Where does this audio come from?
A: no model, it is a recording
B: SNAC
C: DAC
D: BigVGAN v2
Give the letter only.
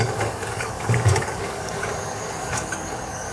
C